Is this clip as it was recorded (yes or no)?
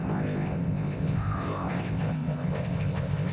no